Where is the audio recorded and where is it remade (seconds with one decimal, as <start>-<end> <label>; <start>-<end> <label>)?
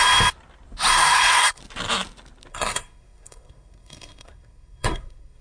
0.0-0.9 recorded; 0.9-1.6 remade; 1.6-2.5 recorded; 2.5-5.4 remade